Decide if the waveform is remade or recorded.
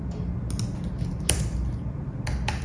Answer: recorded